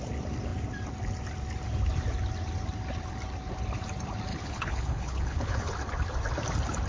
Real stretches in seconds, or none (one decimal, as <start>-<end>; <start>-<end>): 0.0-4.3; 5.7-6.9